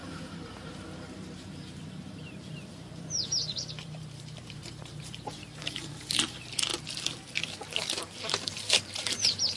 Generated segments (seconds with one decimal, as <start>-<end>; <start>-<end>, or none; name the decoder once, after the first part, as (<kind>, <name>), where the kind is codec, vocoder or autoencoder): 0.0-6.7 (vocoder, BigVGAN v2); 8.0-9.6